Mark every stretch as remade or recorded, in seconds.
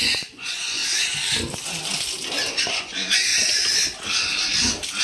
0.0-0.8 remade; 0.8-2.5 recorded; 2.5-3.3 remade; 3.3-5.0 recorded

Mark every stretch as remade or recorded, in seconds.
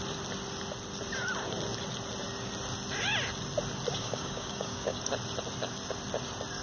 0.0-4.0 recorded; 4.0-5.0 remade; 5.0-6.6 recorded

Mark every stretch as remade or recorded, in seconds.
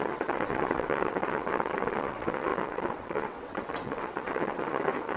0.0-5.2 remade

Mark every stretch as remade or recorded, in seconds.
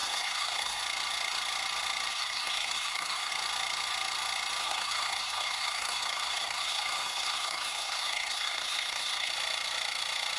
0.0-0.8 remade; 0.8-2.1 recorded; 2.1-3.3 remade; 3.3-4.6 recorded; 4.6-9.3 remade; 9.3-10.4 recorded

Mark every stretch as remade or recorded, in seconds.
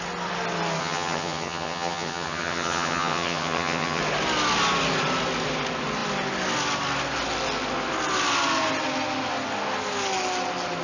0.0-0.8 recorded; 0.8-4.0 remade; 4.0-10.8 recorded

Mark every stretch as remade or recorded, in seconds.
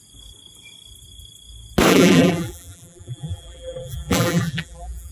0.0-1.9 recorded; 1.9-5.1 remade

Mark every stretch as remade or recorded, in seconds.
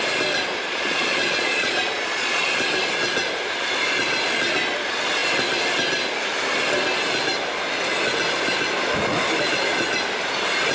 0.0-0.7 recorded; 0.7-2.6 remade; 2.6-10.7 recorded